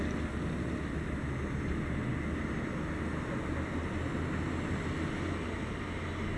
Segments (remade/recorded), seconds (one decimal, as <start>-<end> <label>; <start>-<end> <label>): 0.0-6.4 recorded